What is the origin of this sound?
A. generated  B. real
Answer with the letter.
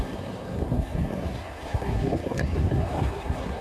A